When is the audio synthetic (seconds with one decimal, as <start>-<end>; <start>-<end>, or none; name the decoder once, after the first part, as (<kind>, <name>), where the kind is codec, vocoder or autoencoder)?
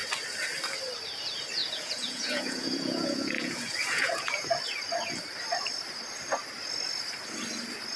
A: 1.6-4.6 (vocoder, Vocos)